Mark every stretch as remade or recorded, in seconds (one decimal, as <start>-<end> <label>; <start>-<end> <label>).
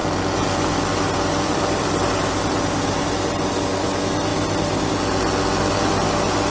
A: 0.0-3.0 remade; 3.0-6.5 recorded